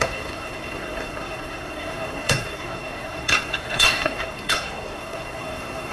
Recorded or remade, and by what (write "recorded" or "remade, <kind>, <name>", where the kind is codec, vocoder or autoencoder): remade, codec, SNAC